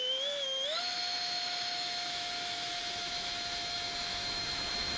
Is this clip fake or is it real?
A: fake